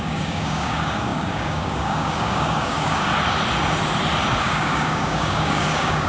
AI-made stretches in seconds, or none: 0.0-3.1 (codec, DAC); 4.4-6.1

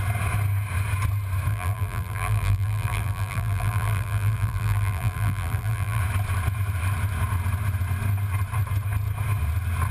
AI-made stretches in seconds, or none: 1.5-6.0 (vocoder, BigVGAN v2)

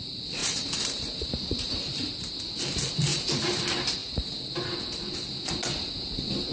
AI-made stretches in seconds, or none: 0.4-2.4 (vocoder, BigVGAN v2); 3.1-3.6

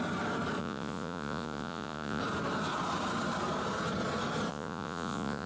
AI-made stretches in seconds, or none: 0.6-2.2 (vocoder, Vocos); 4.5-5.5

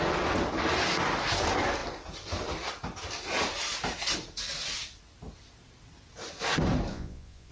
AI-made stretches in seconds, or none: 6.9-7.5 (vocoder, Vocos)

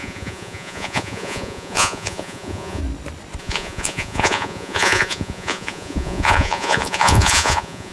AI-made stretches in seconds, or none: 0.0-2.8 (vocoder, Vocos); 3.4-7.9

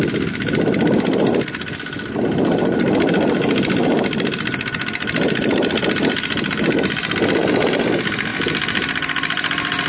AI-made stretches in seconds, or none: none

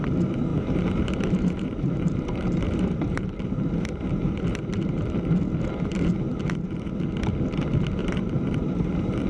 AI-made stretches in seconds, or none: 0.5-5.0 (vocoder, BigVGAN v2); 6.3-6.9; 8.0-9.3